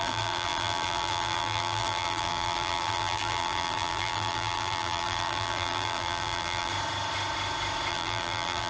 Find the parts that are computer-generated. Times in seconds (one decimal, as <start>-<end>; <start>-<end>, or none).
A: 0.0-6.7; 7.9-8.7